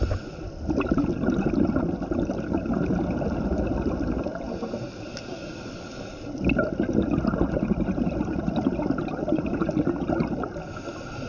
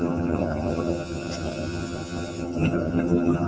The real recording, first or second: first